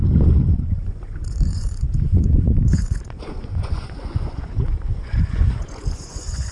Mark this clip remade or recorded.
remade